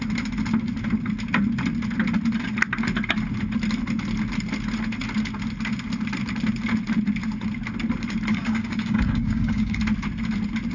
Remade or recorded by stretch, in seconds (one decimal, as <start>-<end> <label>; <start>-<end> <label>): 0.0-8.3 recorded; 8.3-9.8 remade; 9.8-10.7 recorded